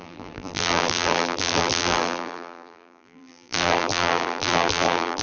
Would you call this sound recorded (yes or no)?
no